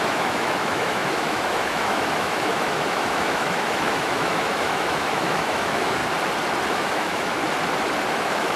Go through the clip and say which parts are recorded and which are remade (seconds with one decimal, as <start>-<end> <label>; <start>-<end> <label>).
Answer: 0.0-6.0 remade; 6.0-6.7 recorded; 6.7-7.4 remade; 7.4-8.1 recorded; 8.1-8.6 remade